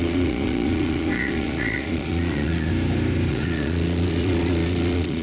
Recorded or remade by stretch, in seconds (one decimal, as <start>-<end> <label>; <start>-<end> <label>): 0.0-2.7 remade; 2.7-3.3 recorded; 3.3-5.2 remade